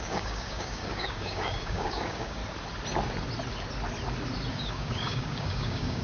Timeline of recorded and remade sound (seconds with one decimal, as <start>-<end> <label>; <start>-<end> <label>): 0.0-2.4 remade; 2.4-4.5 recorded; 4.5-6.0 remade